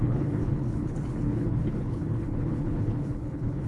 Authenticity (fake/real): fake